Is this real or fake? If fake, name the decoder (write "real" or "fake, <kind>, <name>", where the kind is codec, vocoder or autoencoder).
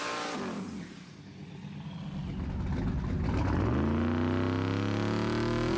real